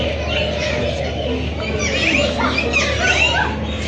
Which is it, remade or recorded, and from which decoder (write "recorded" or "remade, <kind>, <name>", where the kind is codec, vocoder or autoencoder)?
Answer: recorded